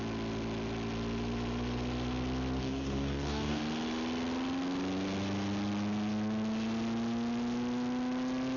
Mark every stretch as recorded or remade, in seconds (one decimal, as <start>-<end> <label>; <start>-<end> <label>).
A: 0.0-2.6 recorded; 2.6-3.6 remade; 3.6-8.6 recorded